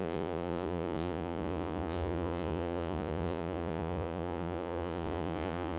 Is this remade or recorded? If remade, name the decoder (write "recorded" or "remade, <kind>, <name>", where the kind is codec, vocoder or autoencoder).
remade, vocoder, Vocos